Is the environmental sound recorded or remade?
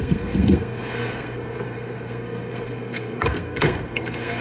remade